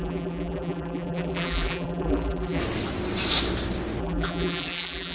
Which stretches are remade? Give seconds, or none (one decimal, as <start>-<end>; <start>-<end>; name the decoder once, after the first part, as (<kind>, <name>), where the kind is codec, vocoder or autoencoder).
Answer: 0.0-2.6 (vocoder, BigVGAN v2); 4.0-5.1